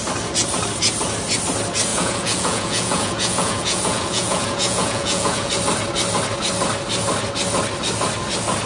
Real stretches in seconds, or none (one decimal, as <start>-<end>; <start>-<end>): 0.0-1.9; 5.5-8.7